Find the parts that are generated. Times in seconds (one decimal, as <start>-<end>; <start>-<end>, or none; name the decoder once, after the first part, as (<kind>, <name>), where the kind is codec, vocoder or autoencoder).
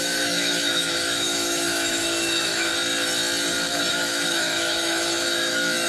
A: 0.0-2.7 (autoencoder, DAC-VAE); 3.9-5.9